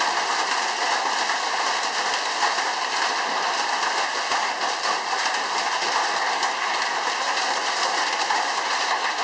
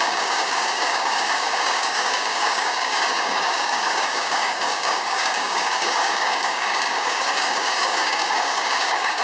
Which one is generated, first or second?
second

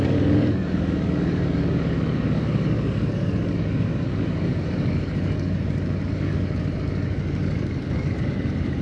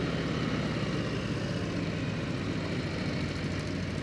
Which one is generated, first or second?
first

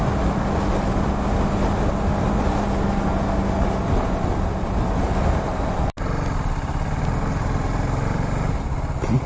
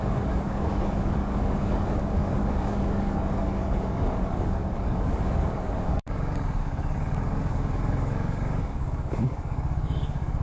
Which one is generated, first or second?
second